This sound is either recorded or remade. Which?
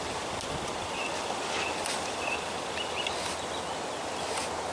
recorded